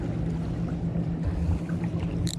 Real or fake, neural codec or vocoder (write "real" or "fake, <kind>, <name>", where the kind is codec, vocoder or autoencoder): real